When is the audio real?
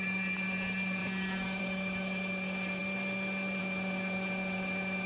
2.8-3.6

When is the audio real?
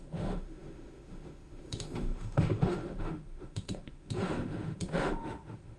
none